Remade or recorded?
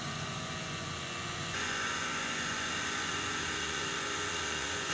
remade